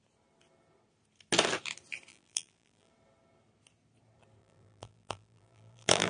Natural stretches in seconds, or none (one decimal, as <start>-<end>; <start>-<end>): 0.0-2.1; 2.9-4.4